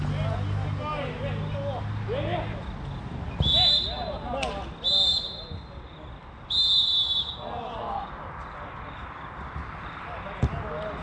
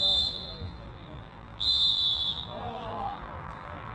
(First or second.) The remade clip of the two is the second